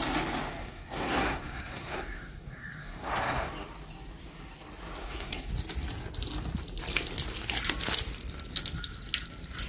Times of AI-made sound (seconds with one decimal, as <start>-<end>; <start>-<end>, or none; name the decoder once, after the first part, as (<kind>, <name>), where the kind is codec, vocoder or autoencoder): 0.6-3.5 (codec, SNAC); 5.0-5.5